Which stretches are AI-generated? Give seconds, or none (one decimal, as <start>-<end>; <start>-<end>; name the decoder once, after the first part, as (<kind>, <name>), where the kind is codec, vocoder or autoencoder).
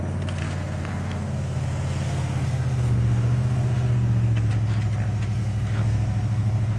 0.4-4.5 (codec, SNAC); 5.4-6.8